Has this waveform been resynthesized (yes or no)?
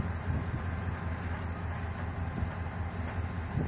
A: no